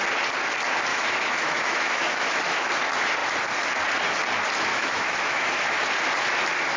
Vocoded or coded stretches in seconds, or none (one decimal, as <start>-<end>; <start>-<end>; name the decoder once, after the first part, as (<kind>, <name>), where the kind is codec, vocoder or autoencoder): 0.9-2.7 (autoencoder, DAC-VAE); 4.7-5.9